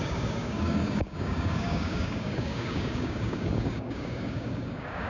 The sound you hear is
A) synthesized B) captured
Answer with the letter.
A